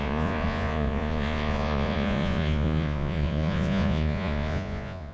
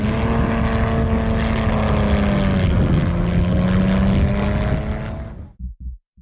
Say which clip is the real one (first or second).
second